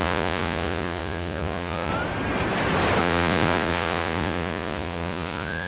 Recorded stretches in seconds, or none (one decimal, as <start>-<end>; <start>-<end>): 1.9-3.0